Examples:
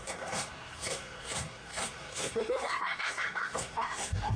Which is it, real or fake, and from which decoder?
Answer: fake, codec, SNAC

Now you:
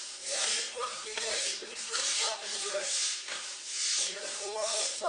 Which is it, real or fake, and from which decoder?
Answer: fake, codec, SNAC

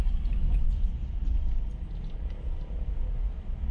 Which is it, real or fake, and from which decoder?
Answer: real